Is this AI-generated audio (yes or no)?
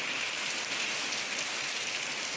no